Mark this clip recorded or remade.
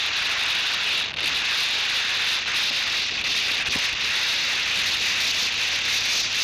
recorded